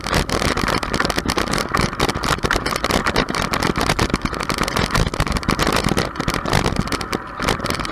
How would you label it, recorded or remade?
remade